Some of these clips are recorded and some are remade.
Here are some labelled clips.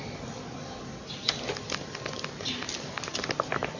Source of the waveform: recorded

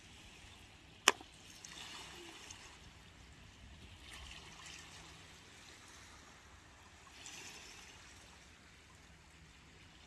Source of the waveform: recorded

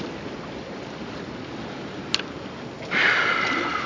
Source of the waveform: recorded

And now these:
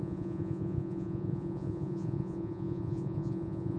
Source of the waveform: remade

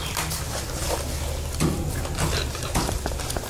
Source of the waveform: recorded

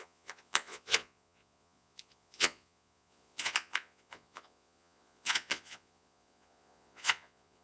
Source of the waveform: remade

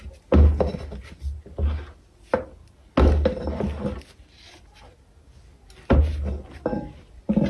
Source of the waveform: recorded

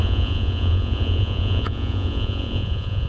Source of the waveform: remade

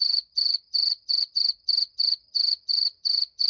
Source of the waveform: remade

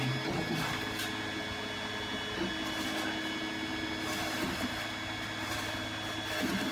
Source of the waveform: recorded